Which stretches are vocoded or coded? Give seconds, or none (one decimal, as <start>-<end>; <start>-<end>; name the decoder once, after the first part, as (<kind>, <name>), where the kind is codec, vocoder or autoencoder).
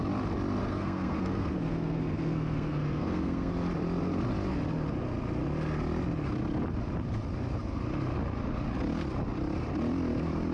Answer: 0.6-3.5 (codec, SNAC)